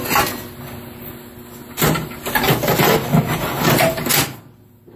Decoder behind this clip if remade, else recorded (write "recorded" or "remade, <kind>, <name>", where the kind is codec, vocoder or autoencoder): recorded